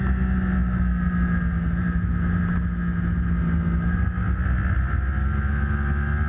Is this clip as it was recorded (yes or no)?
yes